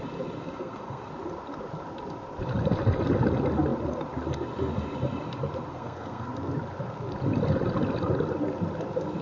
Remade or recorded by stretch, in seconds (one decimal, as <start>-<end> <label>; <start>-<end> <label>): 0.0-0.4 recorded; 0.4-1.1 remade; 1.1-5.7 recorded; 5.7-6.3 remade; 6.3-9.2 recorded